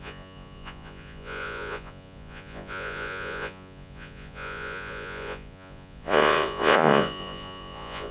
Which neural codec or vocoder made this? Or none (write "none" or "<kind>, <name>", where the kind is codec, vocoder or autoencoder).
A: vocoder, Vocos